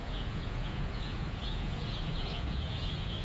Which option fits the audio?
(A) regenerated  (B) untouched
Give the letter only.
A